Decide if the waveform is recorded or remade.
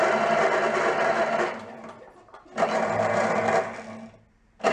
recorded